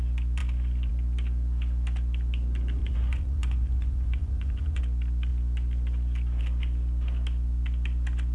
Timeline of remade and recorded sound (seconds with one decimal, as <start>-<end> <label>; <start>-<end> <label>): 0.0-2.8 recorded; 2.8-4.8 remade; 4.8-8.3 recorded